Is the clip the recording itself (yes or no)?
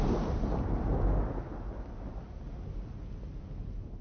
yes